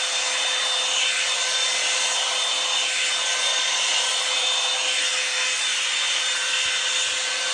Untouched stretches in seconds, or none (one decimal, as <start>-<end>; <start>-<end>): 0.0-3.5; 4.0-7.5